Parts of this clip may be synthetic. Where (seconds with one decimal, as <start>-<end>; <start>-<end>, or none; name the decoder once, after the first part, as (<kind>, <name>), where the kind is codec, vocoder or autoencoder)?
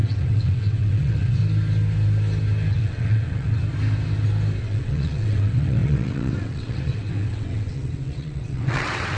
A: 0.0-1.4 (vocoder, WaveNeXt); 2.7-3.6; 4.6-9.2